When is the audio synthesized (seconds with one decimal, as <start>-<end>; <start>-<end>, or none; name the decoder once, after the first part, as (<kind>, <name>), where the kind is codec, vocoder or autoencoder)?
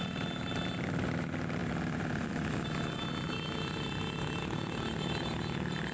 none